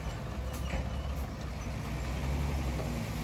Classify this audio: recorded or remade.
recorded